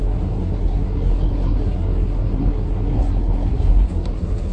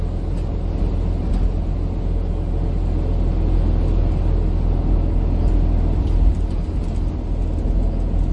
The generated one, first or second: first